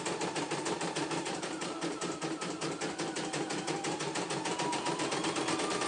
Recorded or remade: recorded